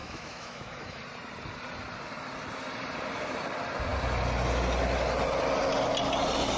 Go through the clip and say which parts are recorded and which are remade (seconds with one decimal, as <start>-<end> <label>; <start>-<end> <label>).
0.0-1.0 remade; 1.0-6.6 recorded